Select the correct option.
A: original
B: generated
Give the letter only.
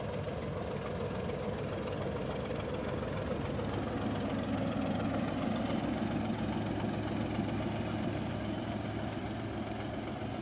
A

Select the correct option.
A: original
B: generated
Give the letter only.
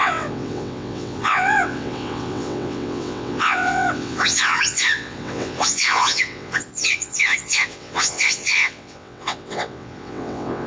B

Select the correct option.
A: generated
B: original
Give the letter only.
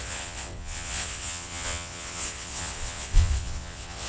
A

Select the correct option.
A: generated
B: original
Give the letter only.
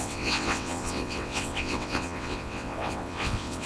A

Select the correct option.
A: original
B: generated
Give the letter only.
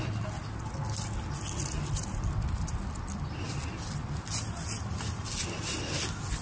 A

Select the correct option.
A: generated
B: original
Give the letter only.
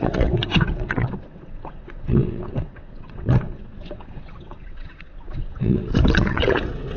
A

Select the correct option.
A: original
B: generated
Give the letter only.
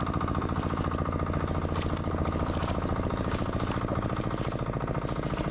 A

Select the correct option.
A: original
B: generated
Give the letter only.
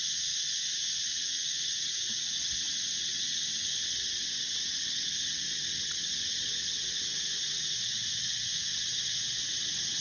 B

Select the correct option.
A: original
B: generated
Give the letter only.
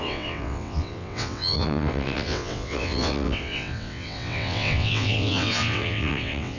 B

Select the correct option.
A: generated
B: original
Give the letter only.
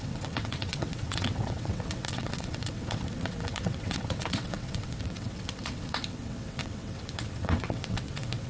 A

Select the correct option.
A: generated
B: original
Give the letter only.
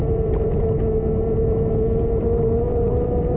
B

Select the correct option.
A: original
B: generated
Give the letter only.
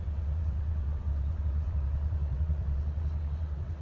B